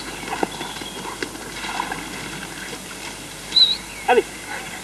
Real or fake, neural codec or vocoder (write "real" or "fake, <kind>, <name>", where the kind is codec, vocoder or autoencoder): real